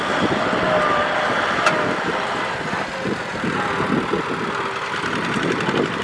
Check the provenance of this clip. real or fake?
real